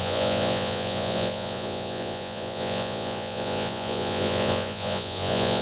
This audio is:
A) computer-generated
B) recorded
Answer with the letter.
A